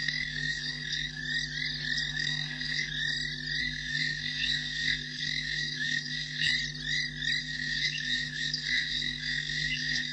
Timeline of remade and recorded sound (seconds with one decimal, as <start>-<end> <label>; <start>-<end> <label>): 0.0-1.2 remade; 1.2-2.1 recorded; 2.1-2.9 remade; 2.9-3.6 recorded; 3.6-6.5 remade; 6.5-7.4 recorded; 7.4-10.1 remade